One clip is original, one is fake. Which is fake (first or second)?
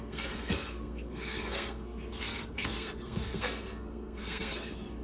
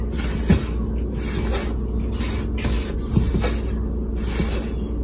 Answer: first